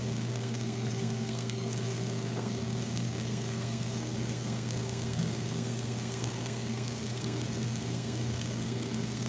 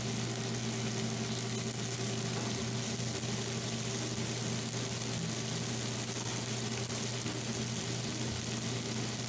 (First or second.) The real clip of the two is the second